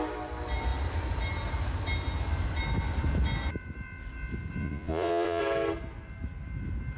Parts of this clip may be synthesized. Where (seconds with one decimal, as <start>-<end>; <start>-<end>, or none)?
4.6-5.4